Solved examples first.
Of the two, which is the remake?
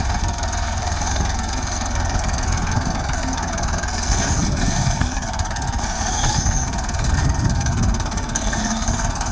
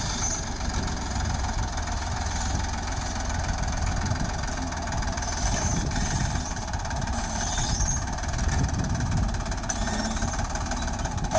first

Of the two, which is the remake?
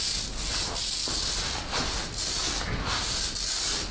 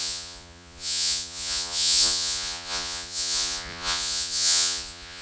second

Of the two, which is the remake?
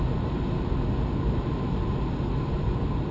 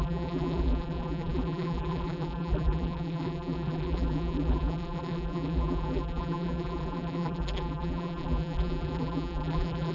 second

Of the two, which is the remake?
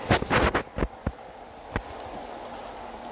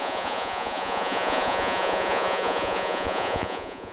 second